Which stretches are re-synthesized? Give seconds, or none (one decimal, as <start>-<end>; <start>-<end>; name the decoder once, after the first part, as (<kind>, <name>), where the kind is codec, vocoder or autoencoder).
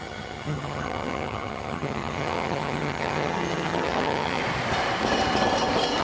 0.0-4.4 (vocoder, HiFi-GAN)